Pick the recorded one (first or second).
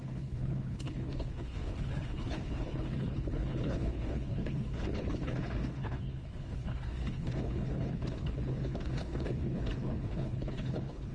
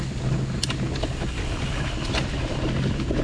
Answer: second